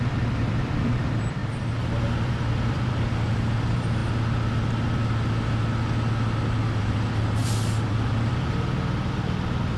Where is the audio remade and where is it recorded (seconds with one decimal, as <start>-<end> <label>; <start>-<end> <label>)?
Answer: 0.0-4.0 remade; 4.0-6.8 recorded; 6.8-9.8 remade